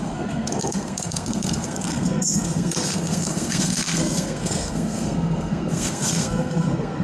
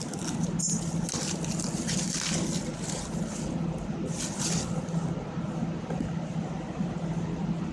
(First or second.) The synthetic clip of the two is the first